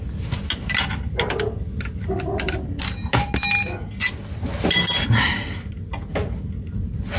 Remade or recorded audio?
recorded